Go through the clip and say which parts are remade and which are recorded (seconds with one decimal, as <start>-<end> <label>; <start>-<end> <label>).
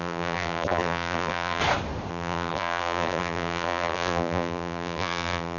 0.0-1.6 remade; 1.6-2.1 recorded; 2.1-5.6 remade